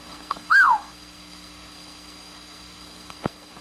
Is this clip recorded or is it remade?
remade